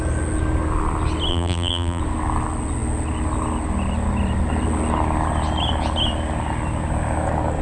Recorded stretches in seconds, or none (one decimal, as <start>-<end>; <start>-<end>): 0.0-1.3; 2.0-7.6